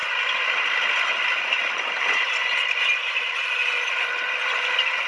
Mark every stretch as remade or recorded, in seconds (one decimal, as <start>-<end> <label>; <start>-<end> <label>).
0.0-5.1 recorded